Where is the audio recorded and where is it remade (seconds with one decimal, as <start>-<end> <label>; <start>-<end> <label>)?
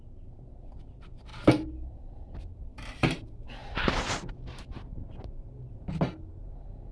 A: 0.0-6.9 recorded